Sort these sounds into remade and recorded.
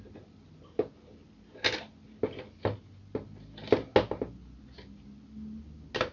recorded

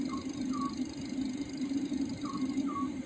recorded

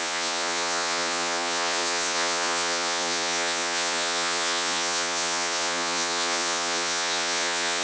remade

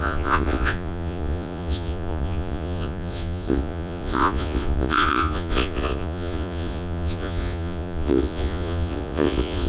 remade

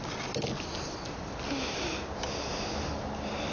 recorded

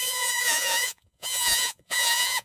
remade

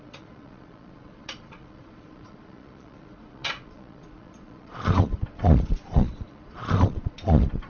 remade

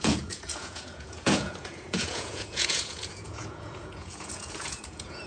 remade